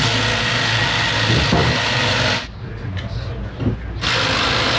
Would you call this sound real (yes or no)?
yes